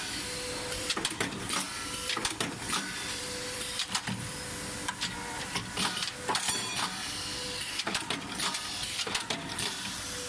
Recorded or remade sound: remade